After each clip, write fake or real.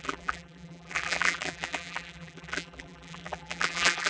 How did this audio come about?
fake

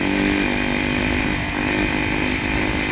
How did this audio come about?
real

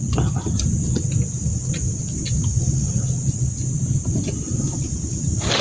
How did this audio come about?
real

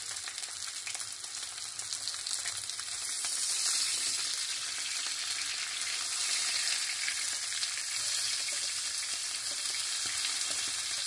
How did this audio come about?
real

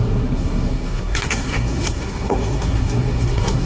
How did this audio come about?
fake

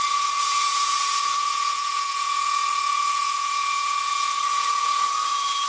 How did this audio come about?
fake